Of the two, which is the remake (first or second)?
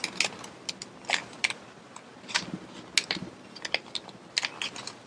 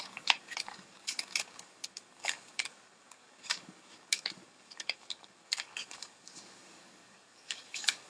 second